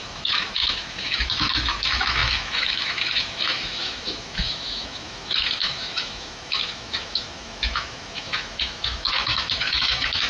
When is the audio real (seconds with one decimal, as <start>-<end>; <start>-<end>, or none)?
none